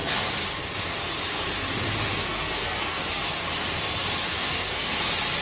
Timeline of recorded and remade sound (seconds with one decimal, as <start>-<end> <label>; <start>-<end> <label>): 0.0-2.2 recorded; 2.2-3.2 remade; 3.2-4.3 recorded; 4.3-4.9 remade; 4.9-5.4 recorded